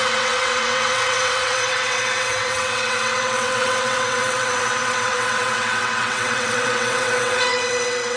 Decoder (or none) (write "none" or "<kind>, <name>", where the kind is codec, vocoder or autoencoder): vocoder, WaveNeXt